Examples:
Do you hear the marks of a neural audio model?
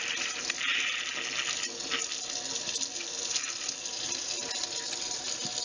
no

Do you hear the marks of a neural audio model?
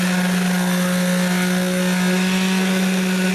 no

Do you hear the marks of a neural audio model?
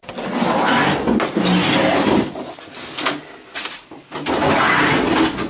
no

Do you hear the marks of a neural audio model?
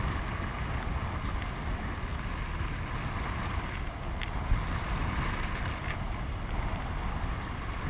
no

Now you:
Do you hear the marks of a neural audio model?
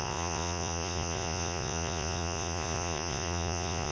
yes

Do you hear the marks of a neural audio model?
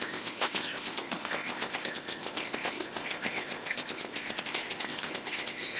yes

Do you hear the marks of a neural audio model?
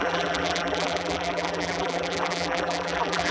yes